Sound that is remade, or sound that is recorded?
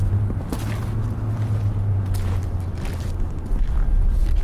recorded